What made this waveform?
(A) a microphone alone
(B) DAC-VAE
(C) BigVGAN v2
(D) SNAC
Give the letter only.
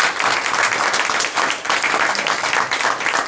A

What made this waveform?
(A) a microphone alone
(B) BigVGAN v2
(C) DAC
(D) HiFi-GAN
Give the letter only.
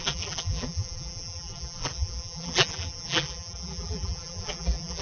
B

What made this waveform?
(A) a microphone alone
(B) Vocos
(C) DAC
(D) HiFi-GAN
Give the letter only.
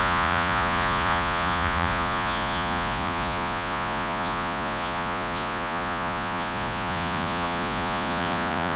B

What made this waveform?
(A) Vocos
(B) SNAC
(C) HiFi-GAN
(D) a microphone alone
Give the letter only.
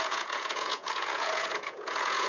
A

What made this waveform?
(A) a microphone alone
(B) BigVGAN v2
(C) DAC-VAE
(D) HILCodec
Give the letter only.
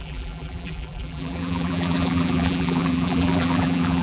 B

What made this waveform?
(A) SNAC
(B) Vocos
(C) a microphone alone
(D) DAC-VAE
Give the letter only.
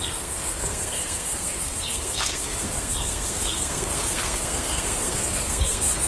A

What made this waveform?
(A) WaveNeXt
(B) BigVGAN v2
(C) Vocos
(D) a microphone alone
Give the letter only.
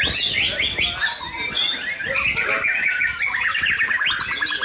D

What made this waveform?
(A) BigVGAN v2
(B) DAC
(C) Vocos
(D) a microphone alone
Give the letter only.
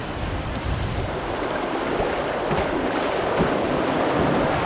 D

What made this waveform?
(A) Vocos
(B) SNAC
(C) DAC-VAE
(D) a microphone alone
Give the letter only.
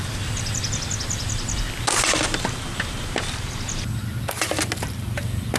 D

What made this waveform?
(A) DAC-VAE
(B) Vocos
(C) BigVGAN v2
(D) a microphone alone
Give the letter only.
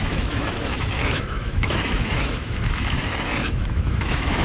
A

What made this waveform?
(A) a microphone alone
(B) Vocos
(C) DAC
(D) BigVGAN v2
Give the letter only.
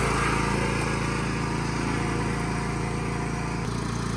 A